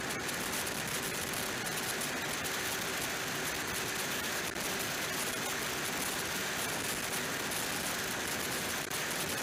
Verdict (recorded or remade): recorded